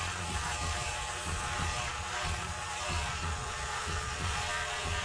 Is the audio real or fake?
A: fake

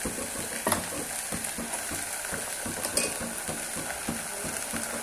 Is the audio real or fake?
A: real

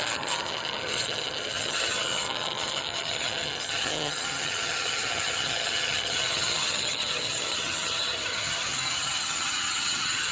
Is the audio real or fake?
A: fake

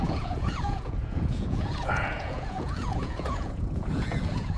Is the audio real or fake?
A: fake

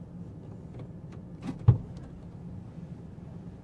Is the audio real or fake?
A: real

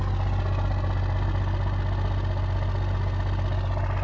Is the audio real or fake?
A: real